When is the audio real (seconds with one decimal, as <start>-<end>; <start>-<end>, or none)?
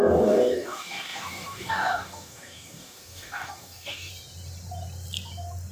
4.1-5.7